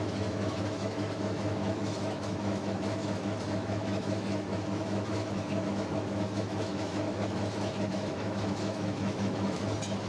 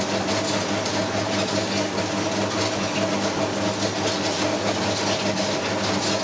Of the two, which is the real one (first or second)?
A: second